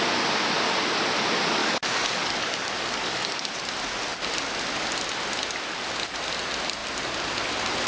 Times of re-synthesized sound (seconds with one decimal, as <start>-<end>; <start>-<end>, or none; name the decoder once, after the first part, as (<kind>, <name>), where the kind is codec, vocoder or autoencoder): 1.6-3.5 (codec, DAC)